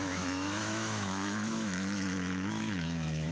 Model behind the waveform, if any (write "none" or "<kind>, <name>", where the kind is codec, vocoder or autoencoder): autoencoder, DAC-VAE